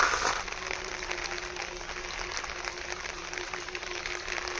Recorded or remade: recorded